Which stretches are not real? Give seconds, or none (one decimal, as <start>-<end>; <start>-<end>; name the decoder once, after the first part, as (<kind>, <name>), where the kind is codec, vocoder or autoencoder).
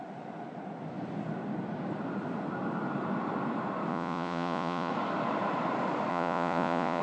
3.9-4.9 (vocoder, Vocos); 6.1-7.0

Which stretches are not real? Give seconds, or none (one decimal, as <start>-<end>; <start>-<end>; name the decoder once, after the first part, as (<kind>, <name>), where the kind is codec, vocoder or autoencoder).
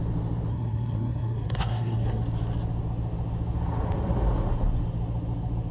0.5-2.2 (codec, SNAC)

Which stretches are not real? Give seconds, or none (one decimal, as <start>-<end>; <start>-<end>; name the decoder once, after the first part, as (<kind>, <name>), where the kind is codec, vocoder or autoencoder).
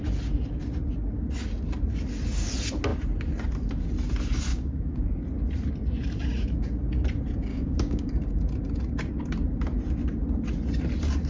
4.5-5.2 (codec, DAC); 7.5-8.3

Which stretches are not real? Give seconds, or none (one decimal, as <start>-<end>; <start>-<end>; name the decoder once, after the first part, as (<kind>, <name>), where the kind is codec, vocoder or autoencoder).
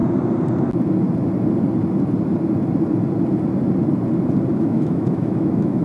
4.5-5.8 (autoencoder, DAC-VAE)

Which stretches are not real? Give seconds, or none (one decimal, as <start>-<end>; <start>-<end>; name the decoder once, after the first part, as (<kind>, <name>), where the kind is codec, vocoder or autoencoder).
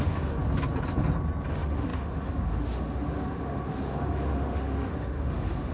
0.0-0.4 (autoencoder, DAC-VAE); 1.5-5.7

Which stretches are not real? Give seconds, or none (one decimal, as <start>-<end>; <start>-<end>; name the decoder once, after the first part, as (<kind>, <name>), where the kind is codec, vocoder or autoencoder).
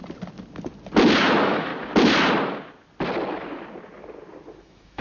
1.2-1.7 (autoencoder, DAC-VAE); 4.6-5.0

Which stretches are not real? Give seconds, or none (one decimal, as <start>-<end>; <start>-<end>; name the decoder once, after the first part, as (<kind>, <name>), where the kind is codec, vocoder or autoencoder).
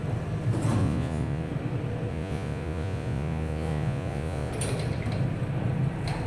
0.8-1.5 (vocoder, Vocos); 2.1-4.5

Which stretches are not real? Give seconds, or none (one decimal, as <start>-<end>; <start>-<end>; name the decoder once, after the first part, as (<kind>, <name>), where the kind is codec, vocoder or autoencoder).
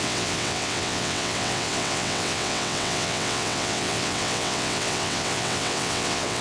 0.0-6.4 (vocoder, WaveNeXt)